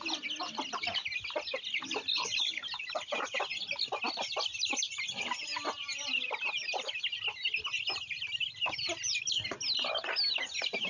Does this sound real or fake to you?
real